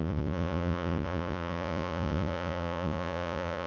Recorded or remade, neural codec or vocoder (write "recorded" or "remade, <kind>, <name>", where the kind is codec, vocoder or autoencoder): remade, vocoder, Vocos